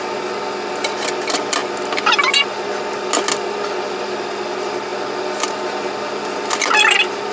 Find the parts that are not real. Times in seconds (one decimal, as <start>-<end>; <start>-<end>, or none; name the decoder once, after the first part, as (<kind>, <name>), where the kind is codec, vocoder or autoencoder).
none